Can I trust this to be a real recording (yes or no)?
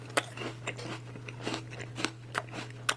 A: yes